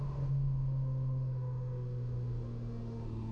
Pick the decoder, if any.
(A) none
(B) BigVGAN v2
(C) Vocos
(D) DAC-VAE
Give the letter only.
D